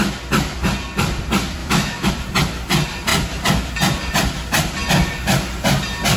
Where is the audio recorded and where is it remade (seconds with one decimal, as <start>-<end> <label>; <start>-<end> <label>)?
0.0-1.6 recorded; 1.6-2.1 remade; 2.1-6.2 recorded